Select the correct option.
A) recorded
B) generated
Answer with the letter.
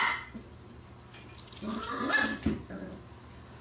A